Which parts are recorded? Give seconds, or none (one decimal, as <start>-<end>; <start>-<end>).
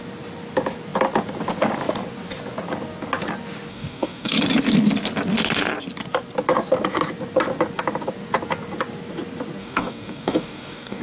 0.0-3.7; 4.3-9.6